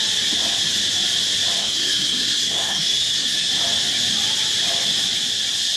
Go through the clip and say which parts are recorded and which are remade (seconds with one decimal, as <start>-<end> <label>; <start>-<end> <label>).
0.0-1.6 recorded; 1.6-3.5 remade; 3.5-5.8 recorded